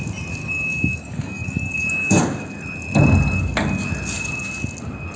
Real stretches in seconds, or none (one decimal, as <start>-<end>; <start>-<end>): 0.0-0.4; 2.2-5.2